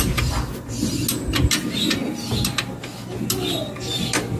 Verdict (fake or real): real